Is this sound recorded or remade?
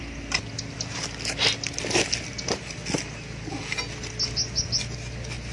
recorded